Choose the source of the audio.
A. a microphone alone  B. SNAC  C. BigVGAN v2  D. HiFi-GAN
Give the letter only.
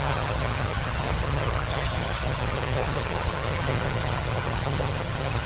D